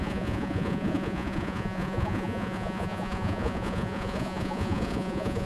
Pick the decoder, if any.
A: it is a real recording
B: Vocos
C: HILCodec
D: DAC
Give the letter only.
B